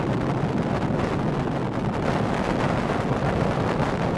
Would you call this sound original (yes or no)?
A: yes